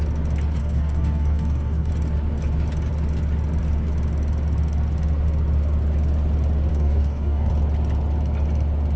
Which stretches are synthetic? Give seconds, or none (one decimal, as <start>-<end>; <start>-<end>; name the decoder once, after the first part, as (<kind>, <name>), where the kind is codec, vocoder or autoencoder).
0.6-1.9 (codec, DAC); 6.7-7.5